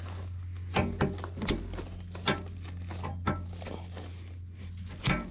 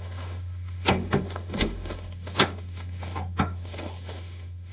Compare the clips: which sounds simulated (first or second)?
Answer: second